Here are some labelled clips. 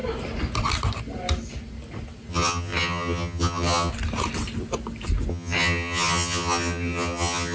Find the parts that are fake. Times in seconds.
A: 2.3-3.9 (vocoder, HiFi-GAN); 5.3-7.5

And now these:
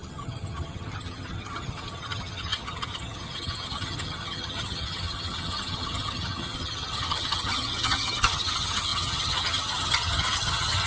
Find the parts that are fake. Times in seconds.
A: 0.0-10.9 (vocoder, HiFi-GAN)

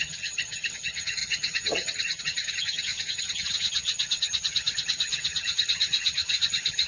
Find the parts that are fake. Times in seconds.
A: 0.0-6.9 (vocoder, HiFi-GAN)

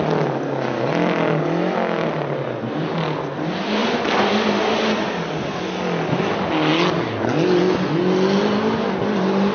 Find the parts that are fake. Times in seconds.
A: none

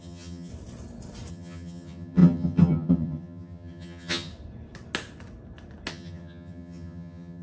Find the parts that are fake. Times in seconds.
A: 0.0-0.5 (vocoder, HiFi-GAN); 1.3-4.3; 5.9-7.4

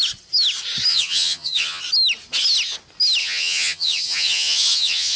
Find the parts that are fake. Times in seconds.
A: 0.9-1.8 (vocoder, HiFi-GAN); 3.2-5.2

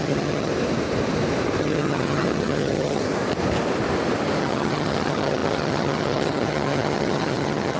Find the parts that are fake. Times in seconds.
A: 0.0-0.5 (vocoder, HiFi-GAN); 1.6-3.0; 4.4-7.8